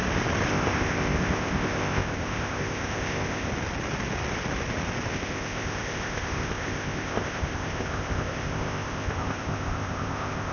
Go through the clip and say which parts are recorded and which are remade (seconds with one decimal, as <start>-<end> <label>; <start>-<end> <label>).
0.0-0.5 recorded; 0.5-3.5 remade; 3.5-5.1 recorded; 5.1-10.5 remade